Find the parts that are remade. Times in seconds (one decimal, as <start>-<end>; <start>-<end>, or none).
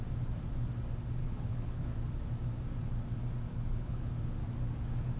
1.2-2.0; 3.5-4.1